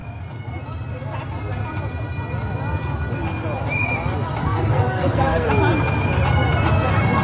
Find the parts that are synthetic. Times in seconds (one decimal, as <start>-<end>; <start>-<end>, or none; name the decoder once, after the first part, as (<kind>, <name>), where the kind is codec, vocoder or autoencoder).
4.4-5.5 (codec, SNAC)